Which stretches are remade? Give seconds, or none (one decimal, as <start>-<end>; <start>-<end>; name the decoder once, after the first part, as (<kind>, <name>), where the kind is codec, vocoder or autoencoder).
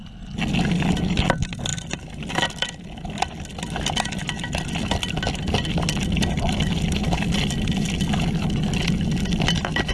none